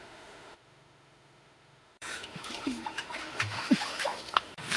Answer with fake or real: fake